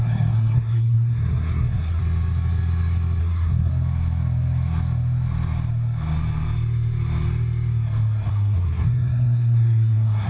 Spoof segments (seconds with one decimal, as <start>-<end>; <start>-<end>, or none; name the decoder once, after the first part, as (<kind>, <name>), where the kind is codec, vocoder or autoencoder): 0.0-2.0 (codec, SNAC); 3.2-3.7; 8.3-10.3